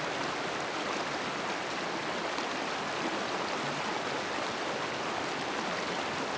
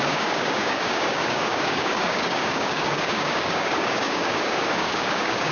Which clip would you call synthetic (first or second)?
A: second